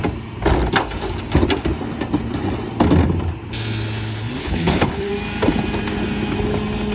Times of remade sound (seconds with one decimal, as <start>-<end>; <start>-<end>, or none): 4.4-5.1